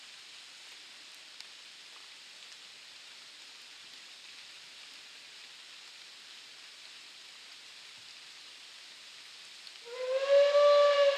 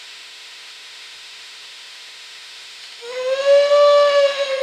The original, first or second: first